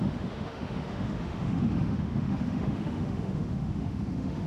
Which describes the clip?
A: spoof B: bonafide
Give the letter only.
A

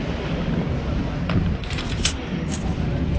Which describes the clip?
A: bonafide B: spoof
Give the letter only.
A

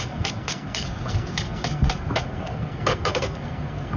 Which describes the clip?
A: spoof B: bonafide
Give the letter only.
A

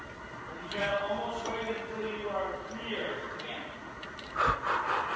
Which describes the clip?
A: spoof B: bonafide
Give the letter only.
B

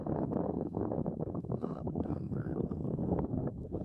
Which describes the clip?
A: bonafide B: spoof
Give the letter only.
B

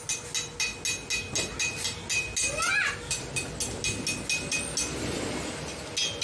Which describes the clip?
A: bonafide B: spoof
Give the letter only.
A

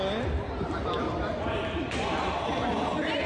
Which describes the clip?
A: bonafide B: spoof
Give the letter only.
A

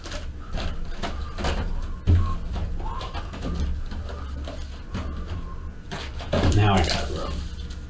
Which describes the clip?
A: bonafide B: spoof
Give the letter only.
A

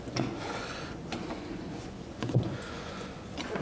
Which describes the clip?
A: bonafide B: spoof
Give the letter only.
B